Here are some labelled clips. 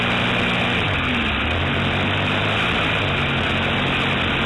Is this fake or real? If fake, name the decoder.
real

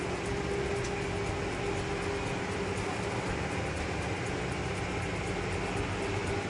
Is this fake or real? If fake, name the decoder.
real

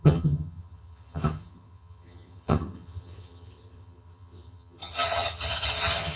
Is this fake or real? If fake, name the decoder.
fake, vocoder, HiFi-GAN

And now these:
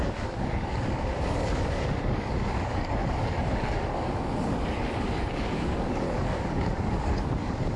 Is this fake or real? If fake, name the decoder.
fake, codec, DAC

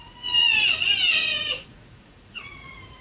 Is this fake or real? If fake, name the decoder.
fake, vocoder, Vocos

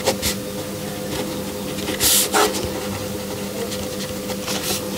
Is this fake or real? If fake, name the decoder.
real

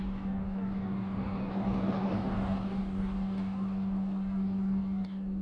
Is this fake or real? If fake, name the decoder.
fake, codec, DAC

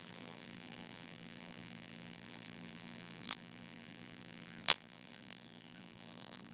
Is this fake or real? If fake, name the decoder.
fake, vocoder, BigVGAN v2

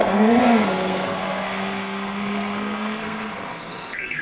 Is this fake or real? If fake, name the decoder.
fake, codec, SNAC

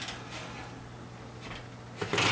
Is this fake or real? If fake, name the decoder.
real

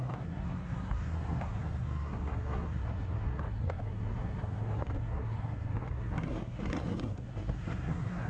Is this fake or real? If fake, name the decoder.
fake, codec, SNAC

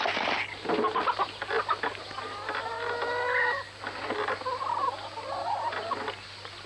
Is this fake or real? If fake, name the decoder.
real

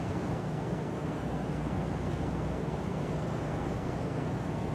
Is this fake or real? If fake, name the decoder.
fake, codec, SNAC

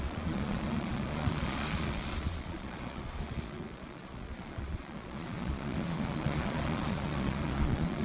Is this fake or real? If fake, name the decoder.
fake, vocoder, Vocos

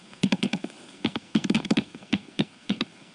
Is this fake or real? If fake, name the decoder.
fake, codec, SNAC